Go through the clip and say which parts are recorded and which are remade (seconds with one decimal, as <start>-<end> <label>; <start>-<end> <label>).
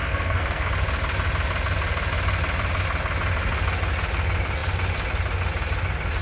0.0-0.7 remade; 0.7-6.2 recorded